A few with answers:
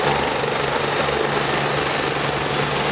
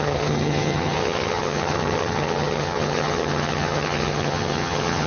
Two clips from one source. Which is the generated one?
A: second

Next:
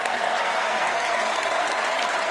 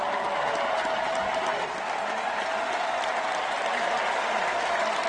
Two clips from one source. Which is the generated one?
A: first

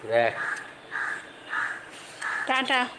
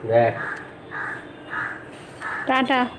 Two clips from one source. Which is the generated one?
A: first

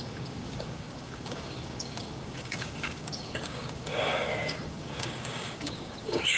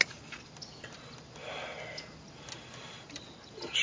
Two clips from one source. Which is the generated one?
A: first